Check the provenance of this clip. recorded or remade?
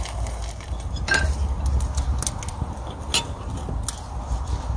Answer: recorded